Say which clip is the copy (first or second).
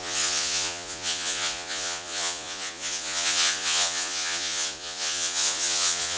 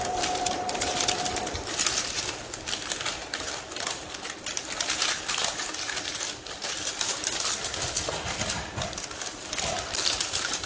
first